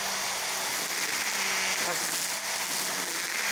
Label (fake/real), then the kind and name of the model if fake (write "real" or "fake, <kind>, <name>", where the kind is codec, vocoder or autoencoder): real